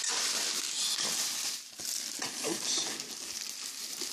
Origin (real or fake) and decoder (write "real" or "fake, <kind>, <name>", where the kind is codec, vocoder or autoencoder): real